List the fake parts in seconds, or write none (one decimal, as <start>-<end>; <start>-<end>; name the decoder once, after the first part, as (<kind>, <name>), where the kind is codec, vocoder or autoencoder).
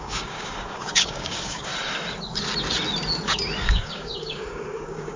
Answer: 0.0-1.7 (codec, DAC); 3.6-5.2